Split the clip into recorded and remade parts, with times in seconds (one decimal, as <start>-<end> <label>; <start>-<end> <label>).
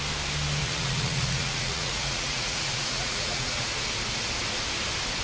0.0-0.6 recorded; 0.6-3.7 remade; 3.7-5.2 recorded